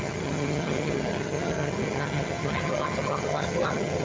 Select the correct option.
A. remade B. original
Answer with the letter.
A